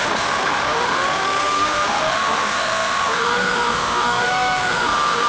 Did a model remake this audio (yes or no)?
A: yes